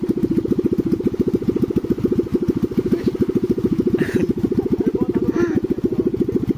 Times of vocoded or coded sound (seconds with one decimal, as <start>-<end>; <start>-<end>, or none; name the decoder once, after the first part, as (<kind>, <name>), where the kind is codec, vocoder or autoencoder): none